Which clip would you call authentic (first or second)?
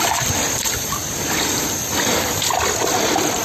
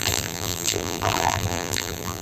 first